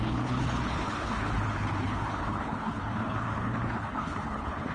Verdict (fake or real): fake